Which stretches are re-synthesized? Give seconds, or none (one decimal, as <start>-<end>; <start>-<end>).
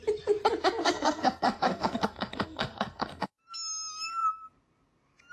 0.8-3.4